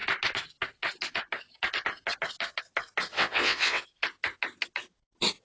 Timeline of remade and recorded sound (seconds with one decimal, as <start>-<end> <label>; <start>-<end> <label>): 0.0-3.1 recorded; 3.1-3.8 remade; 3.8-5.4 recorded